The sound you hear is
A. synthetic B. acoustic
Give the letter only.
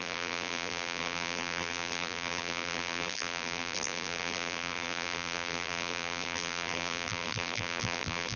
A